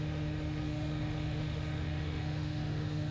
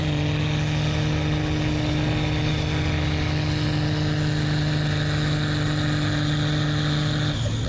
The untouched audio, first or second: second